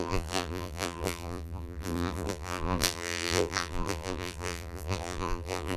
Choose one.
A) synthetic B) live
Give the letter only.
A